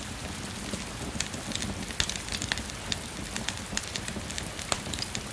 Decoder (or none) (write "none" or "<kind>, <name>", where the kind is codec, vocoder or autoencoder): vocoder, BigVGAN v2